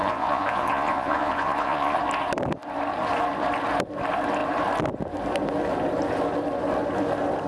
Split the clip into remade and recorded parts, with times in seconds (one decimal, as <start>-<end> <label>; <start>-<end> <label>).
0.0-2.0 remade; 2.0-7.5 recorded